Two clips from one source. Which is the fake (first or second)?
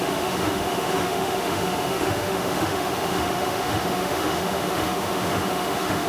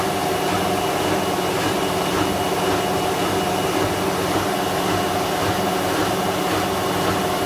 first